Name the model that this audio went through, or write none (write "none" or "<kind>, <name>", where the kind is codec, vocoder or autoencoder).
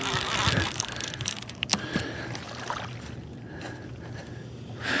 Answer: none